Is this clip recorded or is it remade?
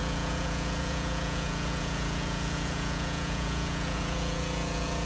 remade